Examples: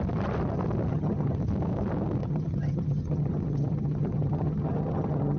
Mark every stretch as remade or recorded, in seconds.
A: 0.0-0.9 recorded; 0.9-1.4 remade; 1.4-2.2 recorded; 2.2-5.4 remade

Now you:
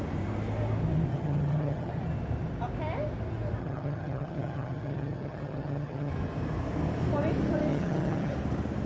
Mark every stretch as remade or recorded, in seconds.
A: 0.0-1.1 recorded; 1.1-1.9 remade; 1.9-3.6 recorded; 3.6-6.1 remade; 6.1-7.7 recorded; 7.7-8.3 remade; 8.3-8.9 recorded

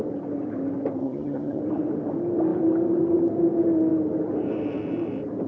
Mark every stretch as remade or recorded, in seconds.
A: 0.0-1.0 recorded; 1.0-1.6 remade; 1.6-5.5 recorded

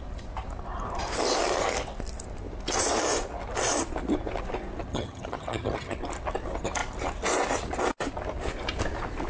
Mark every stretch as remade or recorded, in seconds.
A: 0.0-4.9 recorded; 4.9-6.0 remade; 6.0-9.3 recorded

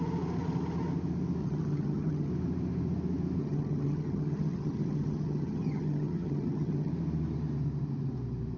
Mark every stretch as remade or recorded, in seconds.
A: 0.0-1.4 recorded; 1.4-2.3 remade; 2.3-3.4 recorded; 3.4-6.9 remade; 6.9-8.6 recorded

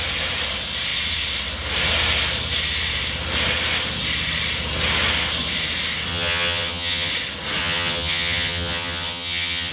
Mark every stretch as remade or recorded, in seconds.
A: 0.0-6.1 recorded; 6.1-7.1 remade; 7.1-7.6 recorded; 7.6-9.7 remade